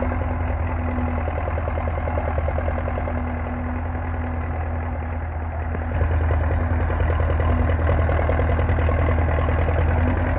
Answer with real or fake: real